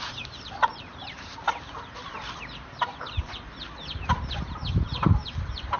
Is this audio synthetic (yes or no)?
yes